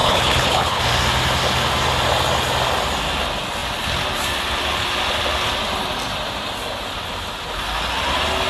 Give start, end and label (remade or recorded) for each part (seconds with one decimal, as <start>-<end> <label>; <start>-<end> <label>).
0.0-0.8 remade; 0.8-8.5 recorded